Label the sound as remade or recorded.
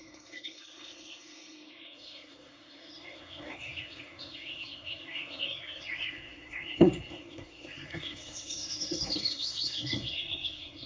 remade